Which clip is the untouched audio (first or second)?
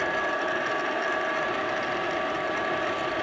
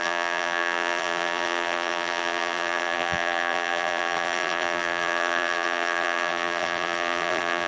first